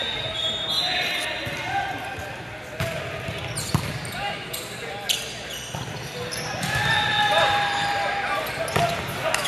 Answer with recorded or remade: recorded